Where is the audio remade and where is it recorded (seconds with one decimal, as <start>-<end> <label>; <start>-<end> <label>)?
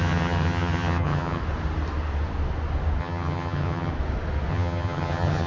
0.0-1.4 remade; 1.4-3.0 recorded; 3.0-3.9 remade; 3.9-4.5 recorded; 4.5-5.5 remade